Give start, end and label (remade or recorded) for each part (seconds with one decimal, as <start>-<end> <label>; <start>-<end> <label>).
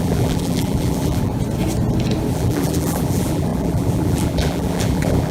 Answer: 0.0-1.3 remade; 1.3-2.3 recorded; 2.3-5.3 remade